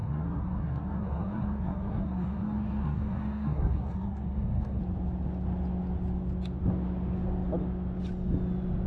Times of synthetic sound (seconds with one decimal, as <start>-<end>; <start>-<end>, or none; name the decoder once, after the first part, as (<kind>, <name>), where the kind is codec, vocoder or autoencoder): 0.0-4.8 (codec, SNAC)